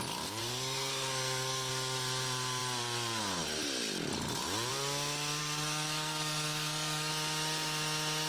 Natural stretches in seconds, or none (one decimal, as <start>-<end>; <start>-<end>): 0.0-0.4; 1.7-5.4; 7.1-8.3